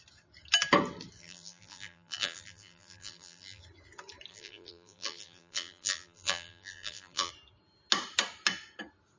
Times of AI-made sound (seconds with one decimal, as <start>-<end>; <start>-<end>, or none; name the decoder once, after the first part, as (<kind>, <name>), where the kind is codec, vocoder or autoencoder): 1.2-3.6 (vocoder, BigVGAN v2); 4.3-7.3